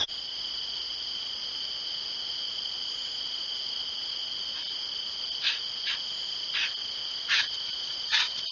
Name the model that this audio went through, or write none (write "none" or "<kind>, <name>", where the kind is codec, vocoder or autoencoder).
none